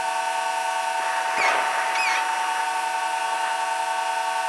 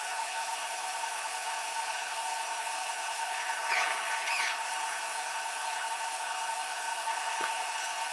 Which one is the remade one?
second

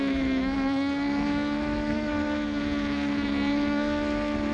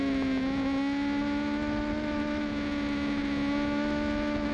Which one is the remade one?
first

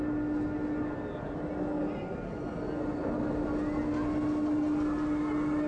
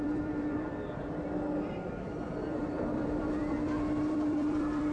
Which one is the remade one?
second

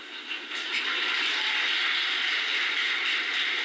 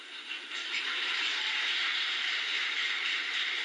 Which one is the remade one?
second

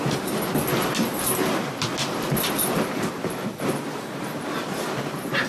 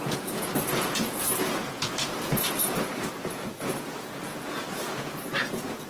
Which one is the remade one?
second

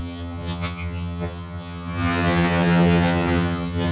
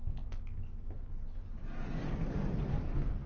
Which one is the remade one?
first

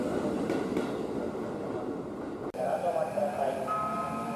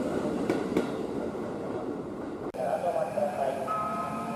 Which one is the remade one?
second